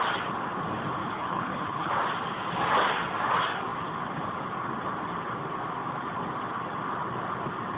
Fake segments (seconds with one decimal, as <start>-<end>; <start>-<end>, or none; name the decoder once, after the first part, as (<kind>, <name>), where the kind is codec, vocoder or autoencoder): 1.0-1.9 (codec, HILCodec)